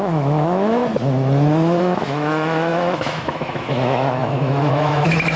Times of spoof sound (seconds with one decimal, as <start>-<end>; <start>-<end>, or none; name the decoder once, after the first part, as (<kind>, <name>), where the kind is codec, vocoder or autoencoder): 0.0-0.8 (autoencoder, DAC-VAE); 1.8-5.4